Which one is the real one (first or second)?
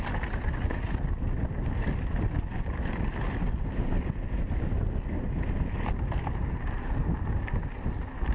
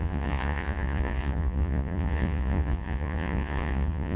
first